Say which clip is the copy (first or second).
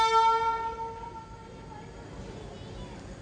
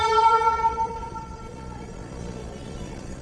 second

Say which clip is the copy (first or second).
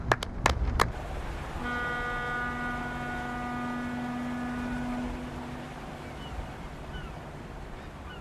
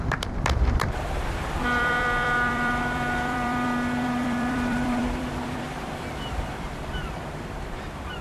second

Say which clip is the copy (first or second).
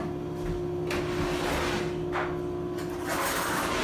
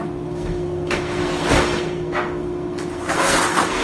second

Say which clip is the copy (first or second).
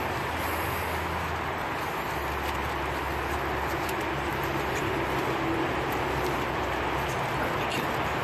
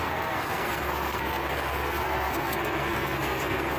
second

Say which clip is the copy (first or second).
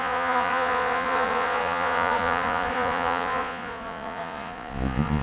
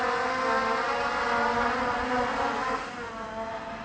first